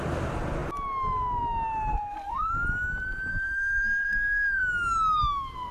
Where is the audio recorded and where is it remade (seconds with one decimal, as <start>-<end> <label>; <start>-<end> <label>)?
0.0-1.9 recorded; 1.9-2.5 remade; 2.5-3.3 recorded; 3.3-4.6 remade; 4.6-5.7 recorded